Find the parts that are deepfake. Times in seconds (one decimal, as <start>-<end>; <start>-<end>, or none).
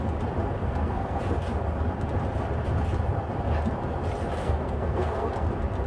0.6-1.2; 4.4-5.5